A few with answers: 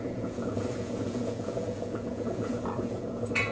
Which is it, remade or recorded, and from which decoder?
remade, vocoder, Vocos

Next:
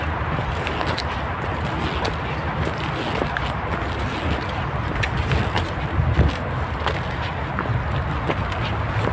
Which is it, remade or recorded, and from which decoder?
recorded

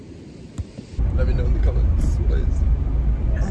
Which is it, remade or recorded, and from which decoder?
recorded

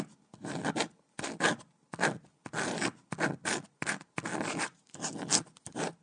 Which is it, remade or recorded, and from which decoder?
recorded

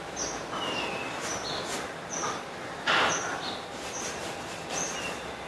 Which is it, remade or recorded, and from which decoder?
recorded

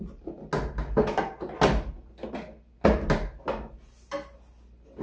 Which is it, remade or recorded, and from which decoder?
recorded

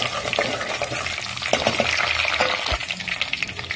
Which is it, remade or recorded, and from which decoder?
recorded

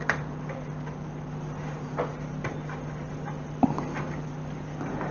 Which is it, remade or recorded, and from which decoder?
recorded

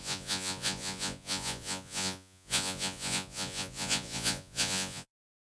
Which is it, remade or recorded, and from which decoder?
remade, vocoder, Vocos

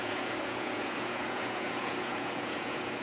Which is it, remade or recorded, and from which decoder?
remade, vocoder, Vocos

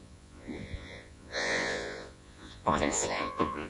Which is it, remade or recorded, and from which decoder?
remade, vocoder, Vocos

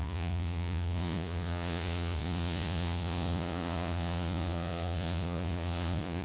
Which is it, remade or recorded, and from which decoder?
remade, vocoder, Vocos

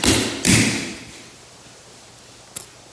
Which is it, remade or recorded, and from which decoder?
recorded